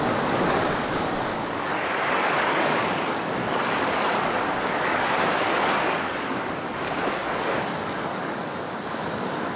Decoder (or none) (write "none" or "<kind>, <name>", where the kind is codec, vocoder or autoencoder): codec, DAC